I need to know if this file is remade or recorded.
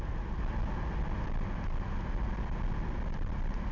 recorded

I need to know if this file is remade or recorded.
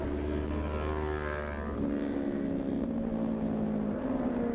recorded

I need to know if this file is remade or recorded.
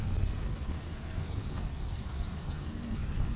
remade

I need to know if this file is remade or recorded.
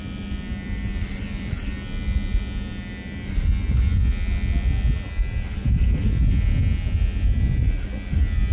recorded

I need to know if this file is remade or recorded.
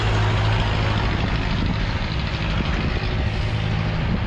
recorded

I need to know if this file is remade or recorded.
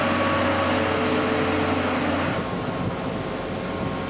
recorded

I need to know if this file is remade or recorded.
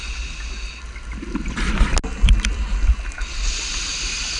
recorded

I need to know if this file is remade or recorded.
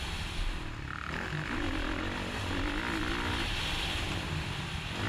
recorded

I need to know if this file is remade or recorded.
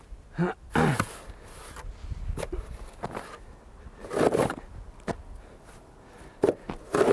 recorded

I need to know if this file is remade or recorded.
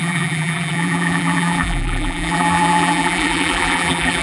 remade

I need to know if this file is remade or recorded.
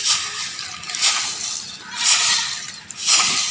recorded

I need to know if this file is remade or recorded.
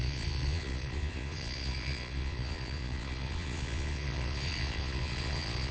remade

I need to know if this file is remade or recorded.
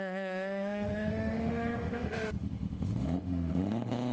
remade